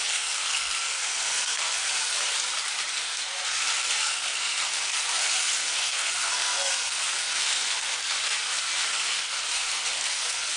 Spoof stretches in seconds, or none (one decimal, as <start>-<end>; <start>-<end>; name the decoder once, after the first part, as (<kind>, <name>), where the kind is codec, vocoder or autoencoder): 0.0-2.1 (codec, SNAC); 2.9-10.6